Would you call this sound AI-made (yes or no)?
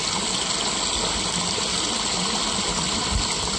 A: no